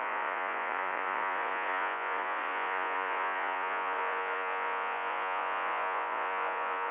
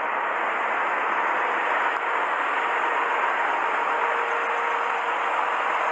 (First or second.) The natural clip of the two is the second